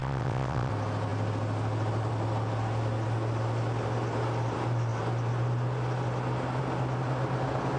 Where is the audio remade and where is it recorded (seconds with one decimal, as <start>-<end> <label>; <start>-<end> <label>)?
0.0-0.7 remade; 0.7-7.8 recorded

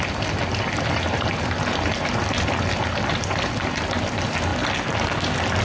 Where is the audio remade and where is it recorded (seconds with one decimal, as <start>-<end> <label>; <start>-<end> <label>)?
0.0-5.6 recorded

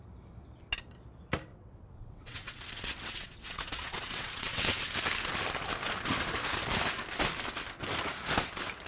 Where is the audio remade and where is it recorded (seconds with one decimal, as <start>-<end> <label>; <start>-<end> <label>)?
0.0-1.5 recorded; 1.5-4.9 remade; 4.9-8.9 recorded

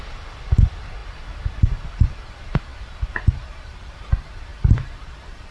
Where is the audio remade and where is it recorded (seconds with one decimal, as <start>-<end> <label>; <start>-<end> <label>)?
0.0-5.5 recorded

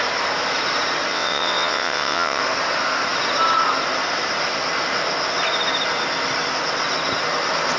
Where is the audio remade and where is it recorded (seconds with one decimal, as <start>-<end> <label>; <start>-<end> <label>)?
0.0-1.1 recorded; 1.1-2.4 remade; 2.4-7.8 recorded

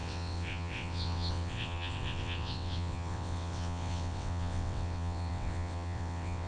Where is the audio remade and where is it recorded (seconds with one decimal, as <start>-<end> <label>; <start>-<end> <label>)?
0.0-6.5 remade

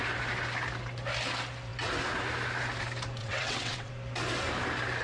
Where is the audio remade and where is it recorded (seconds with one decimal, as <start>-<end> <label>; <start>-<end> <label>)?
0.0-3.2 recorded; 3.2-3.9 remade; 3.9-5.0 recorded